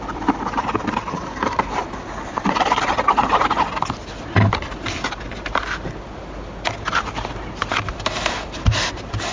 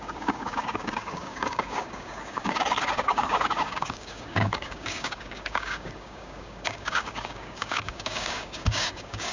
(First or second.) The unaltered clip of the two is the first